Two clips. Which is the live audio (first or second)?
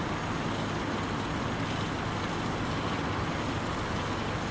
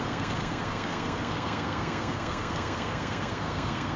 first